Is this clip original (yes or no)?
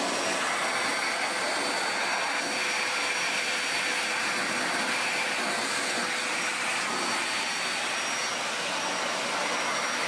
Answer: yes